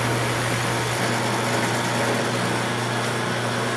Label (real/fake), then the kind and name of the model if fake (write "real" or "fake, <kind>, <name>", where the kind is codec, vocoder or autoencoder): real